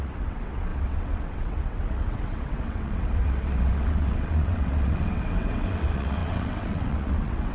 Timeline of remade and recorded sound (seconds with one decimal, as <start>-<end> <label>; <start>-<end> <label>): 0.0-7.5 remade